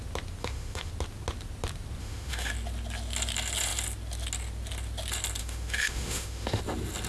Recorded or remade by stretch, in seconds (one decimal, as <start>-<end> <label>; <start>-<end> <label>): 0.0-0.4 recorded; 0.4-0.9 remade; 0.9-2.0 recorded; 2.0-2.5 remade; 2.5-5.4 recorded; 5.4-6.6 remade; 6.6-7.1 recorded